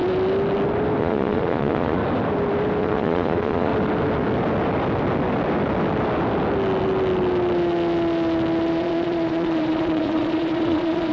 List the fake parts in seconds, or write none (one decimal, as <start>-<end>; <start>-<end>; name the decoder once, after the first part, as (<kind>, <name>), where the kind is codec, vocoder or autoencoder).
1.0-2.0 (vocoder, Vocos); 2.8-3.7; 8.7-11.1